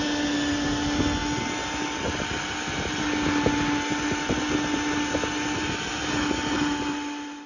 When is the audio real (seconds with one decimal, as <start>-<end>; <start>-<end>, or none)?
0.0-7.5